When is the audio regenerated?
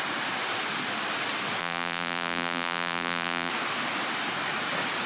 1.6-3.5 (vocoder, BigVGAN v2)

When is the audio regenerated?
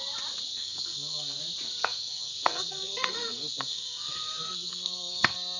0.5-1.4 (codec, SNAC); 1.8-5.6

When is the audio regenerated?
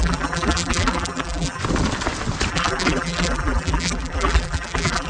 0.0-1.6 (vocoder, BigVGAN v2); 2.5-5.1